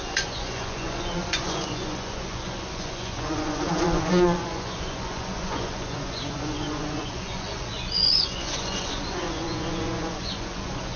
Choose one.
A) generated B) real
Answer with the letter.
A